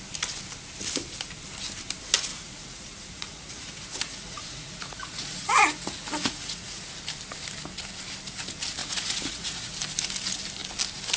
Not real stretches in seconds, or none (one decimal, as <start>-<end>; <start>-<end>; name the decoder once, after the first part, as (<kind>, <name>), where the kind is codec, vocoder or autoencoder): 2.3-6.9 (vocoder, Vocos); 8.8-9.7